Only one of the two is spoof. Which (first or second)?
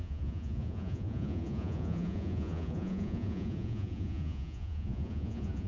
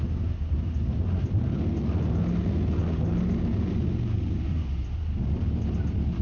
first